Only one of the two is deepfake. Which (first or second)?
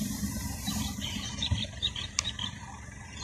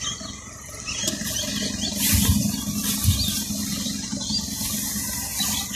first